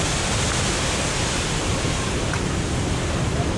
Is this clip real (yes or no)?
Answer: no